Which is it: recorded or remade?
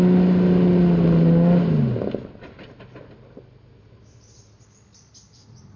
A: recorded